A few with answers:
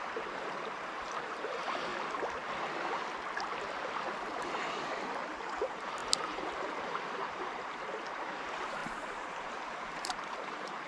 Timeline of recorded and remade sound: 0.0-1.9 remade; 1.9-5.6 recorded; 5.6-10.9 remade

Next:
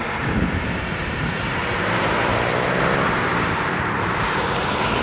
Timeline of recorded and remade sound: 0.0-2.3 remade; 2.3-2.9 recorded; 2.9-5.0 remade

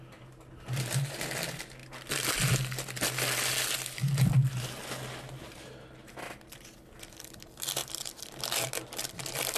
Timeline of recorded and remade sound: 0.0-1.8 recorded; 1.8-5.2 remade; 5.2-7.8 recorded; 7.8-8.4 remade; 8.4-9.6 recorded

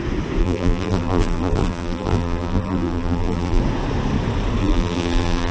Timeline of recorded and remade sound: 0.0-0.4 recorded; 0.4-3.6 remade; 3.6-4.6 recorded; 4.6-5.5 remade

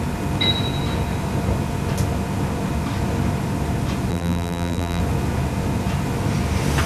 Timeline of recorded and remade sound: 0.0-4.1 recorded; 4.1-5.0 remade; 5.0-6.9 recorded

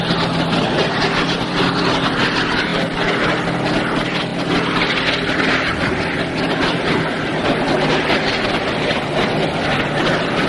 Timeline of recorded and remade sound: 0.0-2.7 recorded; 2.7-3.2 remade; 3.2-10.5 recorded